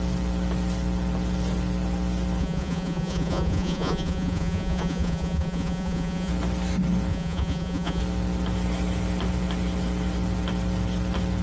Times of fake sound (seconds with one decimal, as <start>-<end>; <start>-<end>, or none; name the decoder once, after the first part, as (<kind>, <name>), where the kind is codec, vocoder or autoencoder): 2.4-6.3 (vocoder, Vocos); 7.1-8.0